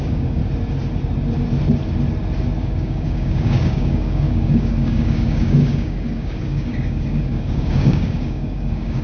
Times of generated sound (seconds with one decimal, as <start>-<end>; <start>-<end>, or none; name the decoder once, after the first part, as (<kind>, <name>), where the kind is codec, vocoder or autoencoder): 0.0-0.4 (codec, DAC); 2.6-9.0